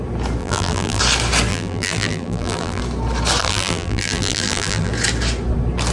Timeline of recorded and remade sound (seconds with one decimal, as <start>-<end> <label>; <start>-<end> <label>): 0.0-0.4 recorded; 0.4-1.0 remade; 1.0-1.5 recorded; 1.5-2.8 remade; 2.8-3.4 recorded; 3.4-4.9 remade; 4.9-5.9 recorded